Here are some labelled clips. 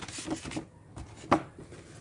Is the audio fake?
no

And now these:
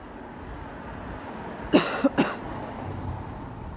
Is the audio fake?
no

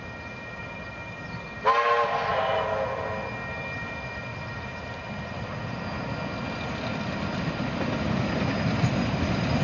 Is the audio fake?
no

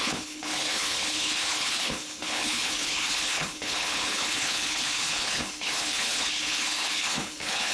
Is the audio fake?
yes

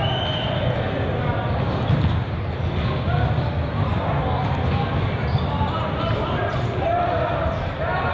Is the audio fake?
no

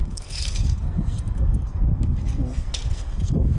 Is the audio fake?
yes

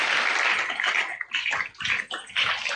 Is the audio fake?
no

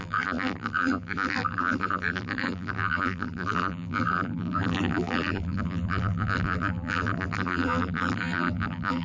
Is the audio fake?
yes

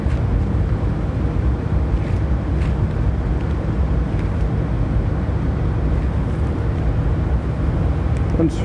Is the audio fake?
no